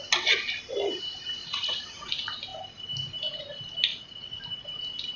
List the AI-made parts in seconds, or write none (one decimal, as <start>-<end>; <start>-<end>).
1.4-2.1; 3.9-4.4